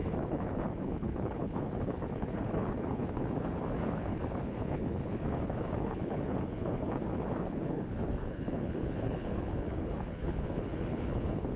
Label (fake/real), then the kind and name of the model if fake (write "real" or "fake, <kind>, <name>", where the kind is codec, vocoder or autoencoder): fake, codec, HILCodec